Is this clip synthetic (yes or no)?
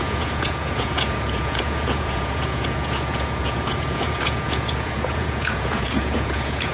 yes